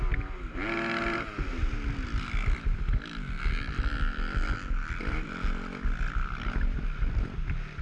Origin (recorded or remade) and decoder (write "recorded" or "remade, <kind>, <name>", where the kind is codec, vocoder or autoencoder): recorded